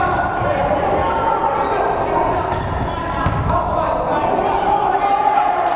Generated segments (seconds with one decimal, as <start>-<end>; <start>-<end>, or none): none